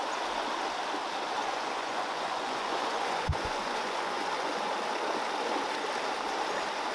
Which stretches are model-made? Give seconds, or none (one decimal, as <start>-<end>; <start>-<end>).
1.4-4.7